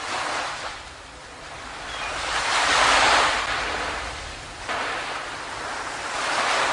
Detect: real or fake real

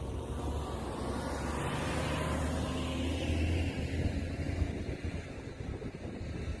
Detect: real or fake real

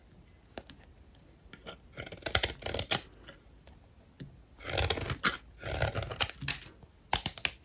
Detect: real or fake real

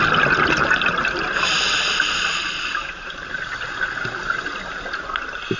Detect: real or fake real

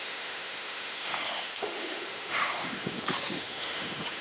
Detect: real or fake fake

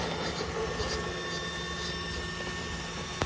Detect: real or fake real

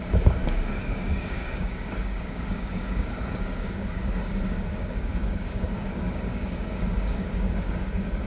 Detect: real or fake fake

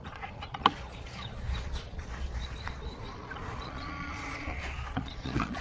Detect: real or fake fake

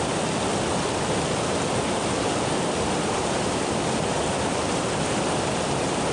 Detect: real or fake real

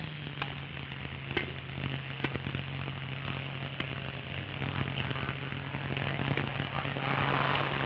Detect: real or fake real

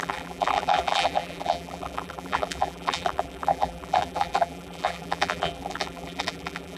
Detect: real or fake fake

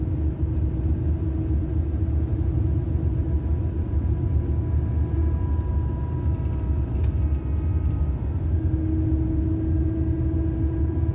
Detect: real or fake real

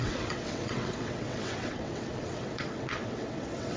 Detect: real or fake fake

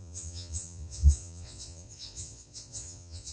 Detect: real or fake fake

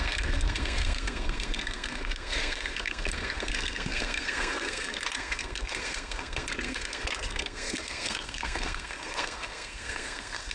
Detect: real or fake fake